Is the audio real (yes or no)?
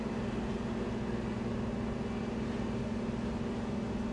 yes